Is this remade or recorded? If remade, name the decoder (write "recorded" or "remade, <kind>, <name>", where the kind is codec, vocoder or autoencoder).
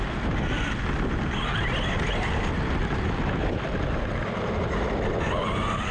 recorded